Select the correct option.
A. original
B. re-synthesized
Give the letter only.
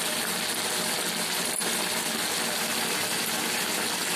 A